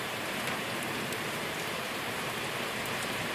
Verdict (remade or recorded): remade